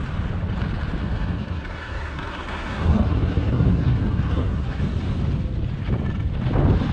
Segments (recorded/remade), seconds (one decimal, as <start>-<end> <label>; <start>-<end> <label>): 0.0-1.0 recorded; 1.0-4.8 remade; 4.8-6.9 recorded